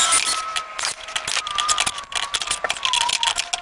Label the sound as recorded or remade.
recorded